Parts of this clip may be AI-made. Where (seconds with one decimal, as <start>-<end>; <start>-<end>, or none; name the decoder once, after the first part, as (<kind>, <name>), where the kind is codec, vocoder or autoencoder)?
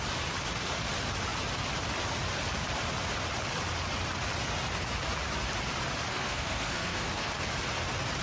6.1-7.3 (codec, SNAC)